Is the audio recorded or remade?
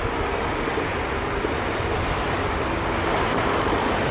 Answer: recorded